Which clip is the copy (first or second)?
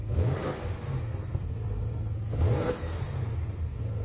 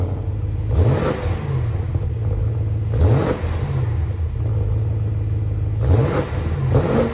first